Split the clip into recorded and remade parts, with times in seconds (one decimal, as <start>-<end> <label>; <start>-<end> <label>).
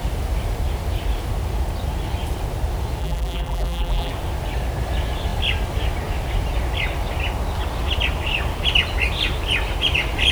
0.0-3.0 recorded; 3.0-4.1 remade; 4.1-10.3 recorded